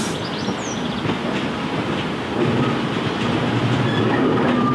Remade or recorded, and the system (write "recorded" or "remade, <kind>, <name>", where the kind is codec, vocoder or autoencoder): recorded